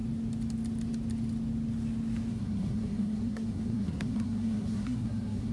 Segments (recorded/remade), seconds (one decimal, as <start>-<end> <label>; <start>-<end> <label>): 0.0-2.3 recorded; 2.3-5.5 remade